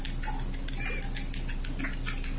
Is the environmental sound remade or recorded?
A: recorded